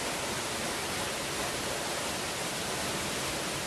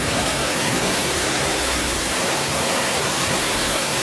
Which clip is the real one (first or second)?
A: first